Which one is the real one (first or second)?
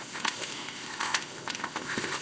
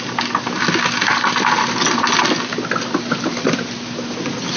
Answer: second